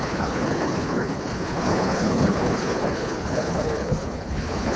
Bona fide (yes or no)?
no